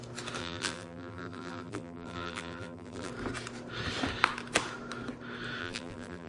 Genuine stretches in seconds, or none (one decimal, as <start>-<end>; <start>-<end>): 0.0-0.4; 3.1-5.6